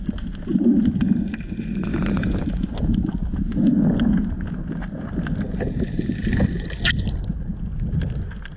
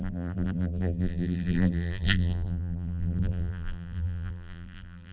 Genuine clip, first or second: first